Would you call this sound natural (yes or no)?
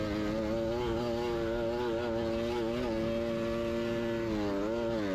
yes